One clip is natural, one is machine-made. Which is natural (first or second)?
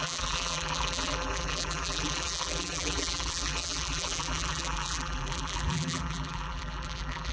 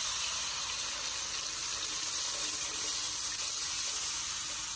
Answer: second